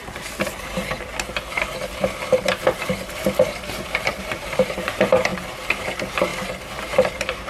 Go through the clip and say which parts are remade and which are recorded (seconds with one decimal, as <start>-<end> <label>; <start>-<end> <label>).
0.0-1.1 remade; 1.1-3.9 recorded; 3.9-5.3 remade; 5.3-5.8 recorded; 5.8-6.3 remade; 6.3-6.9 recorded; 6.9-7.5 remade

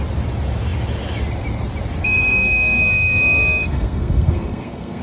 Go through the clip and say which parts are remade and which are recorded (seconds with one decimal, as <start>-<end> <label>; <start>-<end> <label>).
0.0-2.0 recorded; 2.0-5.0 remade

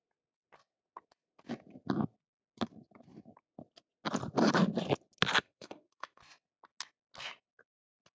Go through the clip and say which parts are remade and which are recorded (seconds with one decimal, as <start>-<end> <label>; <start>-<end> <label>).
0.0-5.4 recorded; 5.4-6.2 remade; 6.2-8.1 recorded

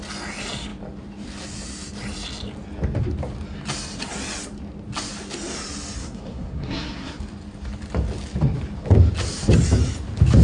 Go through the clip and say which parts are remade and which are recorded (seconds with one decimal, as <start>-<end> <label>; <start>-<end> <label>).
0.0-6.0 recorded; 6.0-7.2 remade; 7.2-10.4 recorded

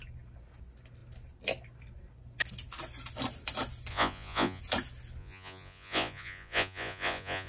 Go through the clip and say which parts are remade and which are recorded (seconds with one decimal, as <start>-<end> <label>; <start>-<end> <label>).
0.0-3.9 recorded; 3.9-4.6 remade; 4.6-5.2 recorded; 5.2-7.5 remade

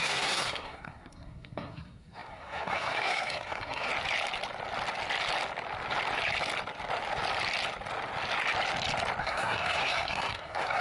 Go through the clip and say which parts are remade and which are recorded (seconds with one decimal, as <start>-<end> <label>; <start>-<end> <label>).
0.0-3.9 remade; 3.9-9.2 recorded; 9.2-10.8 remade